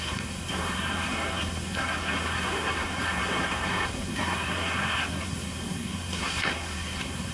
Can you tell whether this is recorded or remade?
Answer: remade